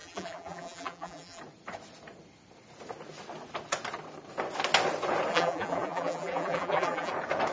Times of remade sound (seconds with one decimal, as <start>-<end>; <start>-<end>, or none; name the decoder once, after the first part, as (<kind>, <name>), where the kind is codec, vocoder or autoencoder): 0.0-1.4 (vocoder, BigVGAN v2); 5.3-7.1